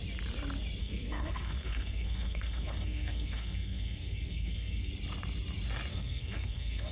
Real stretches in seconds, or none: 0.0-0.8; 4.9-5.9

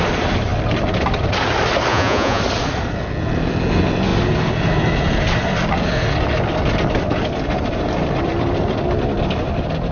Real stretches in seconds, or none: 0.0-1.9; 2.4-9.9